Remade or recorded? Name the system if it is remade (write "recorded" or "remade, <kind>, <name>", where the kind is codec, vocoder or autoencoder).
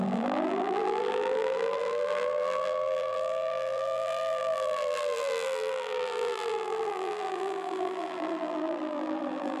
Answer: remade, vocoder, BigVGAN v2